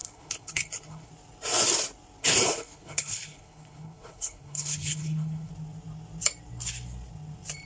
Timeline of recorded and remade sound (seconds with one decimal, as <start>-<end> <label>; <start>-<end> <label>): 0.0-1.1 remade; 1.1-2.2 recorded; 2.2-5.5 remade; 5.5-7.7 recorded